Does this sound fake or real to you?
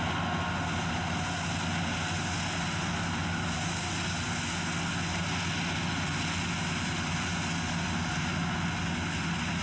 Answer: real